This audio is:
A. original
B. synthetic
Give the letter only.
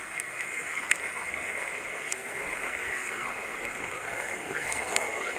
B